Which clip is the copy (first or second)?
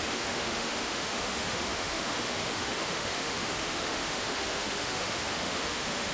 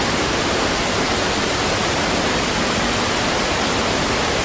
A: first